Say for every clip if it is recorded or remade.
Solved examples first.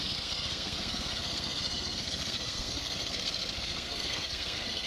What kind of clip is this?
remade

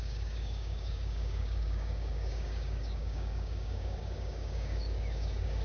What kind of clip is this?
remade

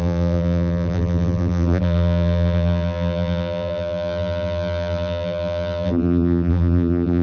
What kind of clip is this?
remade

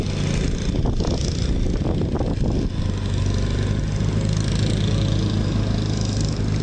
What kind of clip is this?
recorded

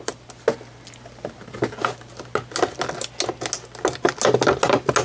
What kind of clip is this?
recorded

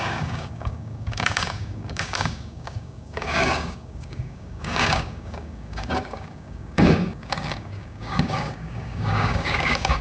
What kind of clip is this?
remade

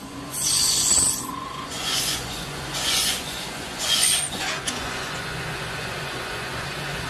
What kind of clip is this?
remade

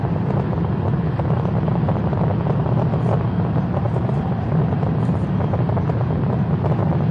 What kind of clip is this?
remade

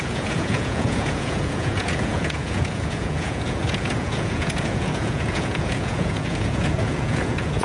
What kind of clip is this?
remade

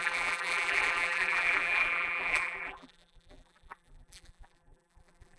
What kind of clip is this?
remade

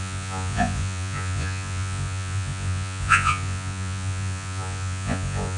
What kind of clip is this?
remade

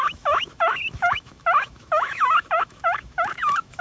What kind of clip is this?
remade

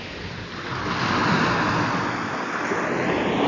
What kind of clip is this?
recorded